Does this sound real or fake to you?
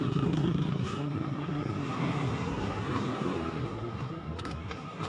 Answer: fake